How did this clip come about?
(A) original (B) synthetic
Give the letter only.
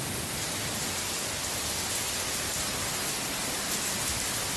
A